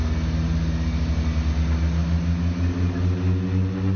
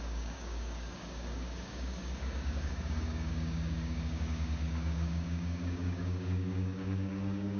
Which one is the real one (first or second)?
first